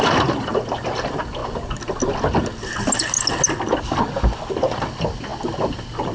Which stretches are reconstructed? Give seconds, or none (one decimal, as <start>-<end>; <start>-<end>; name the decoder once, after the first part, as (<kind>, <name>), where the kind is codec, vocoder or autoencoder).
none